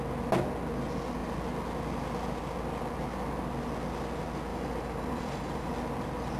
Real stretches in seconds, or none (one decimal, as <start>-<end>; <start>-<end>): 0.0-4.5; 5.7-6.4